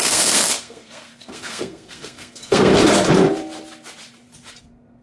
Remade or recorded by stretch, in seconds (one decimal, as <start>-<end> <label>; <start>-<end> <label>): 0.0-2.7 remade; 2.7-4.6 recorded; 4.6-5.0 remade